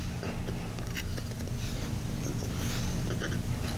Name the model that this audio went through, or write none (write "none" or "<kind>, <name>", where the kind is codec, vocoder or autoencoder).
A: none